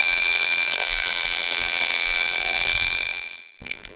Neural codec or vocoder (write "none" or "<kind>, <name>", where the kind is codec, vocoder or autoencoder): vocoder, BigVGAN v2